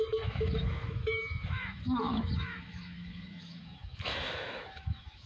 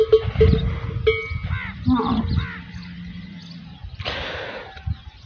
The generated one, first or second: first